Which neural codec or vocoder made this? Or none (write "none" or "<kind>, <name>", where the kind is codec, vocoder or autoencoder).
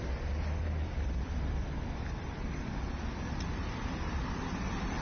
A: vocoder, BigVGAN v2